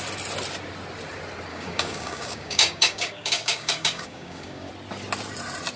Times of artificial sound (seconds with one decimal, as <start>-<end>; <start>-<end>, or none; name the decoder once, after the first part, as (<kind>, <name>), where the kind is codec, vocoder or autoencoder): 1.5-4.7 (codec, DAC)